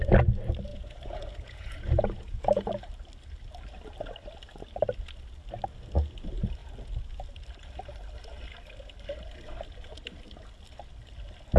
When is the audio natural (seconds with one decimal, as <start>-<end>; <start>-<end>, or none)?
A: 0.0-0.7; 2.7-11.6